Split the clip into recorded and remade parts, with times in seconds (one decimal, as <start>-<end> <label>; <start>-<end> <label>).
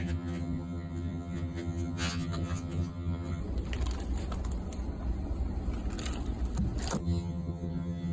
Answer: 0.0-3.4 remade; 3.4-7.0 recorded; 7.0-8.1 remade